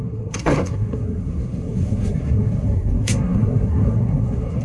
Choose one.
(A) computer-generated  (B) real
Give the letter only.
A